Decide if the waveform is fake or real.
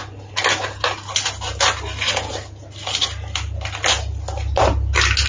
real